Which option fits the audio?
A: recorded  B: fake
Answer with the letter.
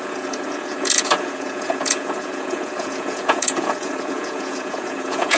B